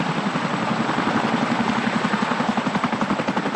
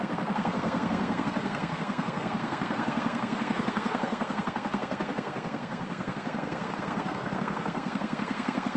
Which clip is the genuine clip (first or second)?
first